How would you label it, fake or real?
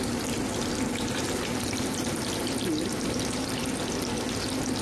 real